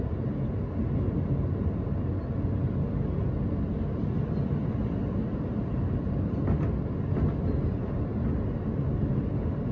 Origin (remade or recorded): recorded